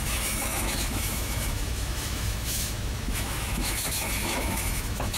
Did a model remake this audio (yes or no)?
yes